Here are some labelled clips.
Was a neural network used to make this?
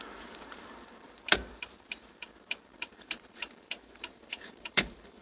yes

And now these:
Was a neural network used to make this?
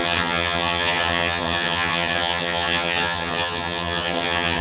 yes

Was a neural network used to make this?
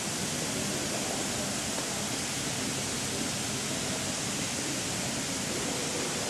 no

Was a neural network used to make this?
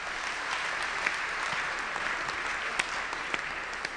no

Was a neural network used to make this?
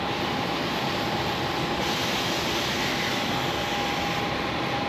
no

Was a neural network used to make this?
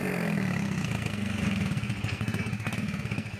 yes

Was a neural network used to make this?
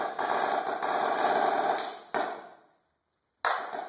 no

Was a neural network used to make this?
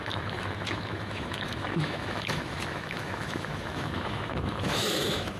yes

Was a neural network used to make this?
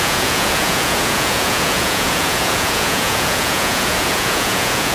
yes